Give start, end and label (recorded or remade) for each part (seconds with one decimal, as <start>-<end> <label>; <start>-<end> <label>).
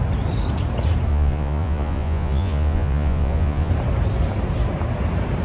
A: 0.0-1.1 recorded; 1.1-3.7 remade; 3.7-5.4 recorded